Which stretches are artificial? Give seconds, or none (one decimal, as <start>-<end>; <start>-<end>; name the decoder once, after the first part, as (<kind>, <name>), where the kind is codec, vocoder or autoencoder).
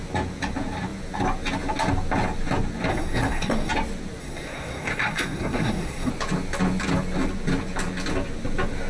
2.9-3.7 (codec, SNAC); 4.2-6.1